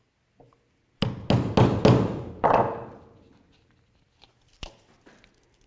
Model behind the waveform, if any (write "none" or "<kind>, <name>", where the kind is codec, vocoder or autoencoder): none